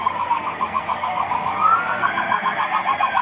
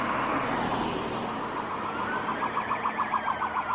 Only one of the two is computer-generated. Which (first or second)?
first